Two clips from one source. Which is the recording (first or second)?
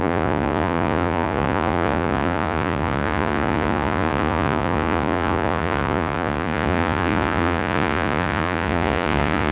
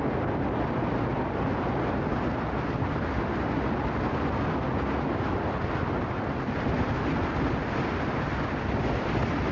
second